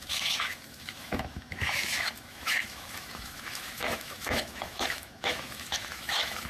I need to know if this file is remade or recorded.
remade